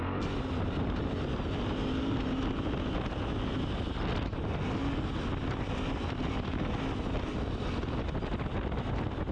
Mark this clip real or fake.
real